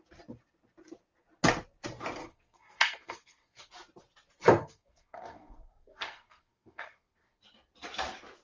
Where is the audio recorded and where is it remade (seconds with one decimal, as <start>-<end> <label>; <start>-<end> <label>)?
0.0-2.2 recorded; 2.2-3.7 remade; 3.7-4.6 recorded; 4.6-7.4 remade; 7.4-8.4 recorded